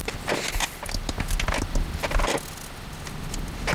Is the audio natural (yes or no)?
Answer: yes